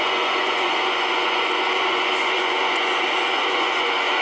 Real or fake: fake